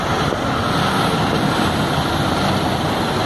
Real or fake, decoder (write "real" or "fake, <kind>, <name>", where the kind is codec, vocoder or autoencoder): real